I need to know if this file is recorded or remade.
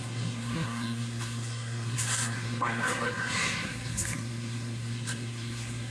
remade